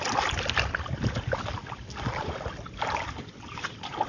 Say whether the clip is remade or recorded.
recorded